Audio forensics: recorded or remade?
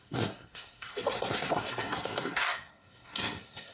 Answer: remade